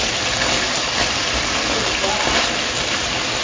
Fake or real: real